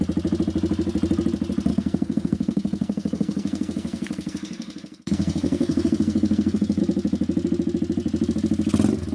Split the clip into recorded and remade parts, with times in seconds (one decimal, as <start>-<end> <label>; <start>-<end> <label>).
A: 0.0-1.7 recorded; 1.7-6.8 remade; 6.8-9.1 recorded